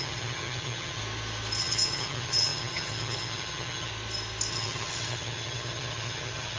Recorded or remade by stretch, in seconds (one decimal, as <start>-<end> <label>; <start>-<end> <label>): 0.0-1.0 remade; 1.0-1.6 recorded; 1.6-3.9 remade; 3.9-4.5 recorded; 4.5-6.6 remade